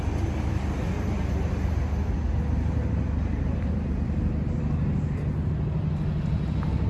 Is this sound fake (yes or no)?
no